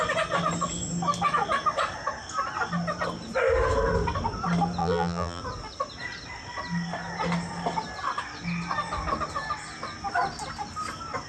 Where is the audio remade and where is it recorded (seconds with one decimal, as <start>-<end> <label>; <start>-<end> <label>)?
0.0-4.8 recorded; 4.8-5.4 remade; 5.4-11.3 recorded